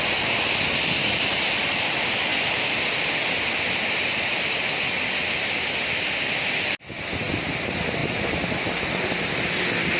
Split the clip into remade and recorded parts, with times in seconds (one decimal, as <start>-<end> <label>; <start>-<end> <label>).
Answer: 0.0-10.0 recorded